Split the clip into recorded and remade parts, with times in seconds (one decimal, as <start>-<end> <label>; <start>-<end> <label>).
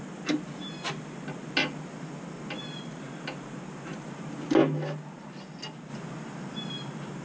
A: 0.0-7.2 recorded